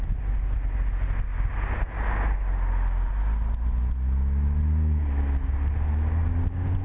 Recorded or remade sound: recorded